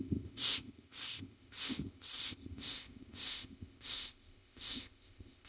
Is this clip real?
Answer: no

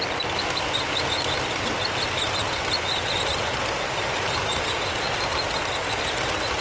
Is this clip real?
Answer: yes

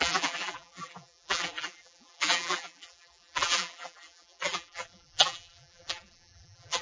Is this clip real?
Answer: no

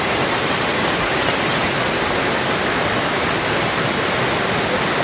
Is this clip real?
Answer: yes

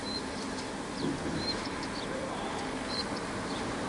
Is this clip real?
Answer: yes